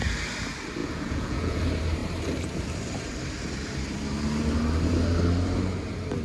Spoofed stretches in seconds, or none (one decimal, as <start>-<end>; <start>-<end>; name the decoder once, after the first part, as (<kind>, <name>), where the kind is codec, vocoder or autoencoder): 0.8-1.6 (vocoder, Vocos)